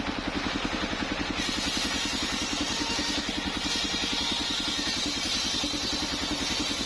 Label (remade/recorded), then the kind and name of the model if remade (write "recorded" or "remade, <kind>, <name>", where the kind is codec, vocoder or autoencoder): recorded